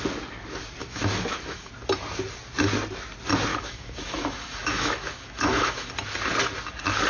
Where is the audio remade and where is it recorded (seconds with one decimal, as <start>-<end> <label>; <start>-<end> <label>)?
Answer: 0.0-0.8 recorded; 0.8-1.7 remade; 1.7-3.5 recorded; 3.5-5.9 remade; 5.9-7.1 recorded